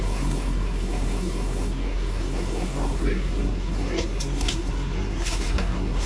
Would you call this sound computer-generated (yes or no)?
yes